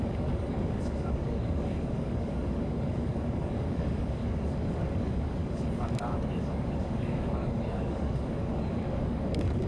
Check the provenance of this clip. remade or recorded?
remade